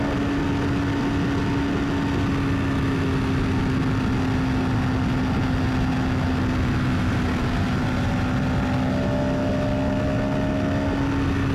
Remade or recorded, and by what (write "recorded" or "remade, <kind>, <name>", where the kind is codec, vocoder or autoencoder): recorded